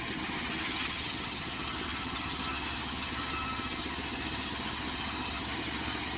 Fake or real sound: fake